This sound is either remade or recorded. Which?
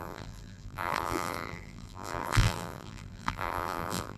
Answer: remade